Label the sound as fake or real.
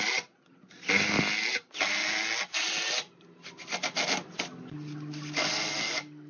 real